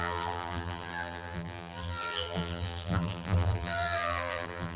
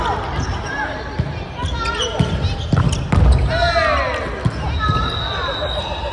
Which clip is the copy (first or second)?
first